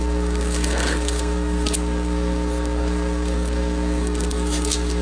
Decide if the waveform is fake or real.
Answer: fake